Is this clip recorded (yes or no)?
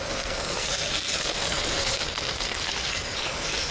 no